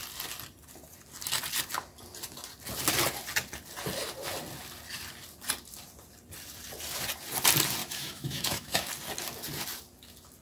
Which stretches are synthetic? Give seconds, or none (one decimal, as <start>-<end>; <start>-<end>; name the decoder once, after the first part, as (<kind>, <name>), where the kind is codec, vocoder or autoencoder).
7.8-8.9 (autoencoder, DAC-VAE)